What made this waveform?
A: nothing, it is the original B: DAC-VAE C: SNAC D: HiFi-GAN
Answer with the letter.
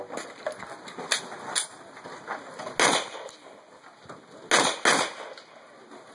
A